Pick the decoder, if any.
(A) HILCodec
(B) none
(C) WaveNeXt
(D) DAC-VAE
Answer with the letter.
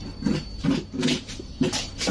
B